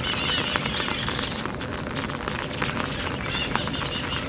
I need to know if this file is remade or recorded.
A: recorded